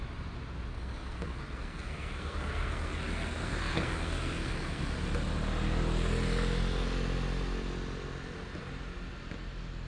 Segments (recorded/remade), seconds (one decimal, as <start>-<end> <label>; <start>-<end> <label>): 0.0-0.7 recorded; 0.7-4.9 remade; 4.9-9.9 recorded